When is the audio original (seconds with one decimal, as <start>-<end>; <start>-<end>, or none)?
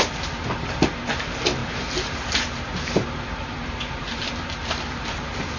0.0-1.6; 3.0-3.4